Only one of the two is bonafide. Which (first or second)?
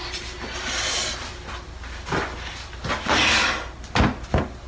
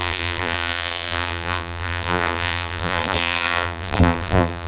first